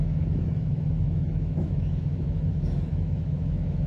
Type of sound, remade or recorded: remade